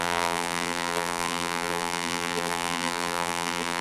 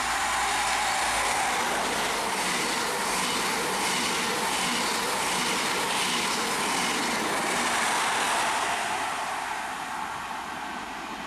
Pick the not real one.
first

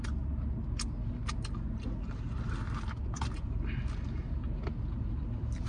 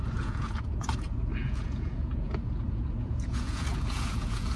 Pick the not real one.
second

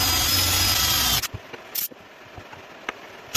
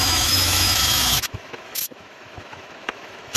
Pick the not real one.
second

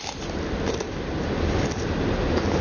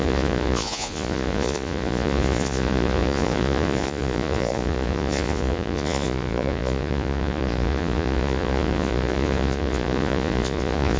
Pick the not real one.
second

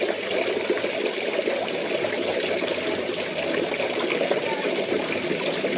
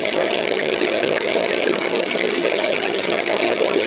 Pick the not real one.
second